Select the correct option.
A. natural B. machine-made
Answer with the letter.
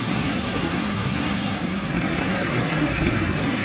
B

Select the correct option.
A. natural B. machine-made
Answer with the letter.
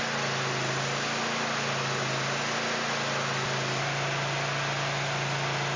A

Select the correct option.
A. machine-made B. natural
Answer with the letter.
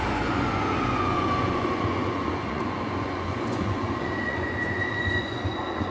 A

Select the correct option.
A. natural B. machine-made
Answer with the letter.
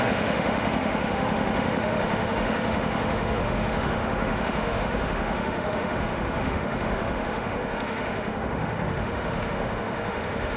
B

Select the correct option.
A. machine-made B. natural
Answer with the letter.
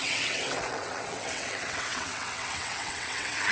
A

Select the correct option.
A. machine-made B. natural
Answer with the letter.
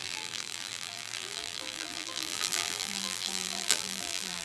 A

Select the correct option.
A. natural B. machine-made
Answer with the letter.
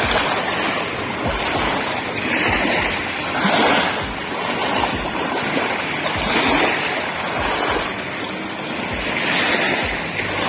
A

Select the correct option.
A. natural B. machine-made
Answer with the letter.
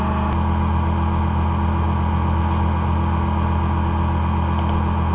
A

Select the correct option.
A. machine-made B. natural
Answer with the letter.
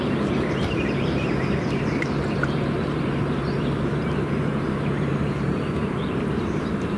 A